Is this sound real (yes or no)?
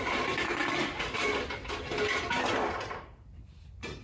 yes